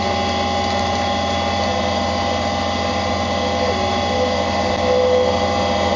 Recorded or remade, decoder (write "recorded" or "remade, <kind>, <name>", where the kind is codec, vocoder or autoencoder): recorded